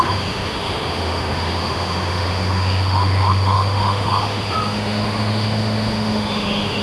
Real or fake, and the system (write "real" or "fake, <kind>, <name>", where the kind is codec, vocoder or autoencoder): fake, autoencoder, DAC-VAE